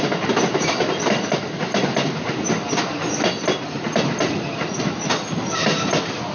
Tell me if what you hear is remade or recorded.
recorded